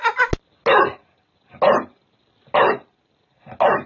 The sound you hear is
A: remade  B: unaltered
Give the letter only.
B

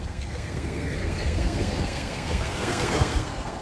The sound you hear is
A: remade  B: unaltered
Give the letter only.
A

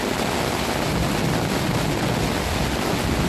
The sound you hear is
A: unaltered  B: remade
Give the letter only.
A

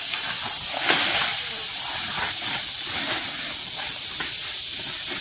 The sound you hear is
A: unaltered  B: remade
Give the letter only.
A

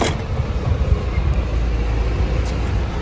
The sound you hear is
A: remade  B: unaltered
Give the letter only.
B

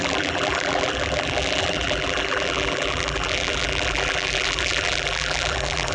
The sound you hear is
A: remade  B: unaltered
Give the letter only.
A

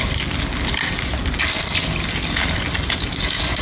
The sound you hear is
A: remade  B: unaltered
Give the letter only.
B